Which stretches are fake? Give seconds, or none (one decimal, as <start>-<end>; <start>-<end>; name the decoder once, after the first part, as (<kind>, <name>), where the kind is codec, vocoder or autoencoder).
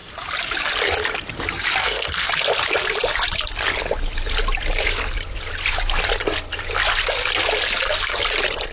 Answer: 1.8-2.3 (codec, SNAC)